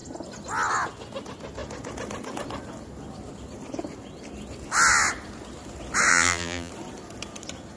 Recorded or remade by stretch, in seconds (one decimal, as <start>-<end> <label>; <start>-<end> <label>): 0.0-6.1 recorded; 6.1-6.7 remade; 6.7-7.8 recorded

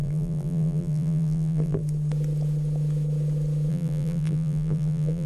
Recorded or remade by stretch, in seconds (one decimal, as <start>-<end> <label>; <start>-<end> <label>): 0.0-1.8 remade; 1.8-3.7 recorded; 3.7-5.3 remade

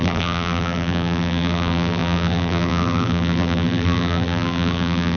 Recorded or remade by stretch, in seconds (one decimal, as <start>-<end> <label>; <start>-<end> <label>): 0.0-5.2 remade

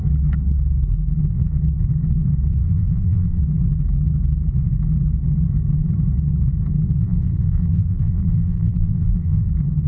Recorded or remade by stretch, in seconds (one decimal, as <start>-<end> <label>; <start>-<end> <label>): 0.0-2.5 recorded; 2.5-3.4 remade; 3.4-7.0 recorded; 7.0-9.5 remade; 9.5-9.9 recorded